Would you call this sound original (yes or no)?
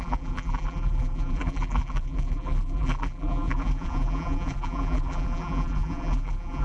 no